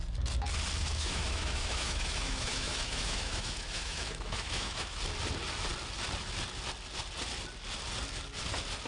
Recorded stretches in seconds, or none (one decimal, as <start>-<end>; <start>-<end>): 0.0-0.8; 5.0-8.9